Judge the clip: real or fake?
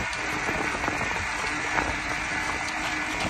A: real